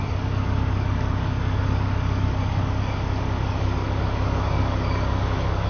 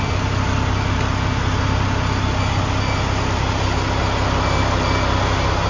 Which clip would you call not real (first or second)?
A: first